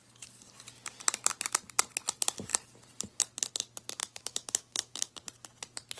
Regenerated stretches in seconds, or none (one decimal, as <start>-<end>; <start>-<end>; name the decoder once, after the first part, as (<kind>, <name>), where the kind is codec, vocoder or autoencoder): 4.0-5.1 (autoencoder, DAC-VAE)